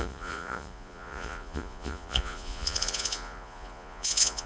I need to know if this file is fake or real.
fake